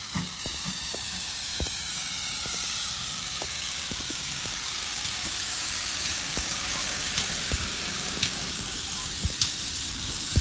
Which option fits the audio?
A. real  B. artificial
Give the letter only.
B